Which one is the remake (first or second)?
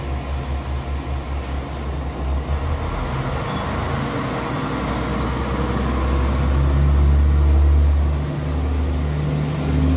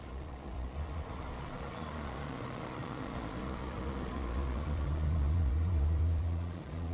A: second